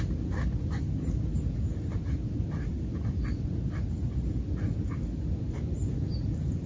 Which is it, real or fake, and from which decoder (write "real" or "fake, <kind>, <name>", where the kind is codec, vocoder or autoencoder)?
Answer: real